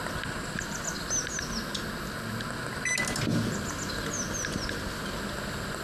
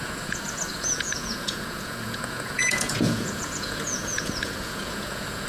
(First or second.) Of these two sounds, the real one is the first